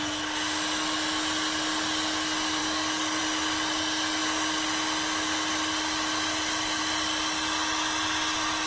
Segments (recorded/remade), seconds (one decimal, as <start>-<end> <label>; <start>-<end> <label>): 0.0-2.6 recorded; 2.6-3.2 remade; 3.2-8.7 recorded